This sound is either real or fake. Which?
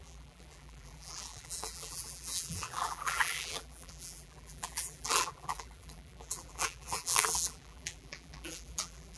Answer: fake